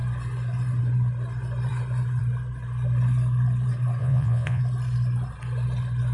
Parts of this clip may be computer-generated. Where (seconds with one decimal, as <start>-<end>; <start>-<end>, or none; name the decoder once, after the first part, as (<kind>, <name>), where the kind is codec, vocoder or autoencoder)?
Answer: 4.0-4.6 (vocoder, Vocos)